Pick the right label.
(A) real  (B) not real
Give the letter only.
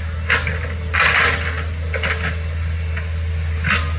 A